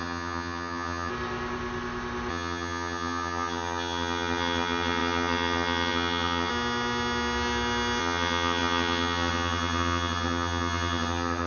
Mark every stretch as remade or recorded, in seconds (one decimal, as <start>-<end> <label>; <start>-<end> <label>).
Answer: 0.0-1.1 remade; 1.1-2.3 recorded; 2.3-6.5 remade; 6.5-8.0 recorded; 8.0-11.5 remade